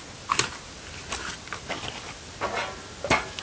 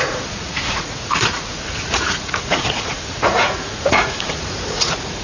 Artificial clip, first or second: second